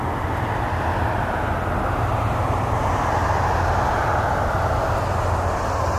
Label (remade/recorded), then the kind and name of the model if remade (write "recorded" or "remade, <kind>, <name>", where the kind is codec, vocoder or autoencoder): recorded